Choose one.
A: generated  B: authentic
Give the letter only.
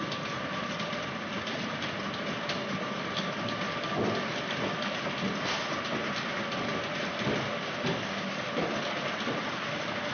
B